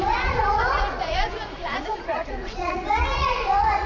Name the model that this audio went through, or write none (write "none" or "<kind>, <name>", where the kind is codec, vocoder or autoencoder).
vocoder, Vocos